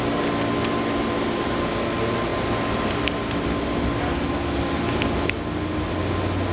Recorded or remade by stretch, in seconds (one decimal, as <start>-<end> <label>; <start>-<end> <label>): 0.0-6.5 recorded